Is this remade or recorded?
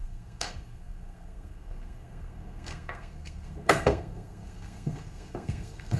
remade